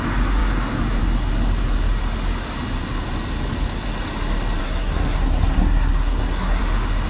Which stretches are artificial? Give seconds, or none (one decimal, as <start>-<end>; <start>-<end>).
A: 4.6-6.6